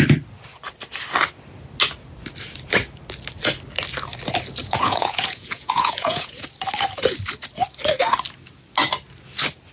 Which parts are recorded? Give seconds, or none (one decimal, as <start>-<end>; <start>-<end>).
0.0-4.6; 6.4-9.7